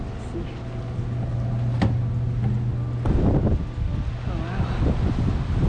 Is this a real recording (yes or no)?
yes